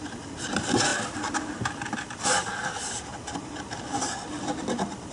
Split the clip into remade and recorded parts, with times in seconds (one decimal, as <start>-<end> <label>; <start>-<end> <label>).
0.0-5.1 recorded